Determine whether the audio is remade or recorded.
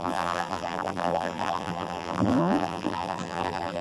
remade